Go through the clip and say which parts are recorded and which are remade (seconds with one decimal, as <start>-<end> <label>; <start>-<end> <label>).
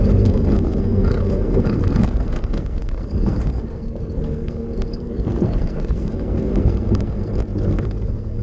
0.0-8.4 remade